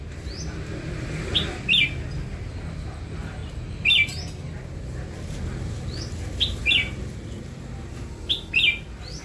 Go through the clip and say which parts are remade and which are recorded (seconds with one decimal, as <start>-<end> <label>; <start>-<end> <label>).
0.0-9.2 recorded